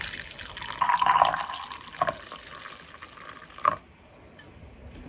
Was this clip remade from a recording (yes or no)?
no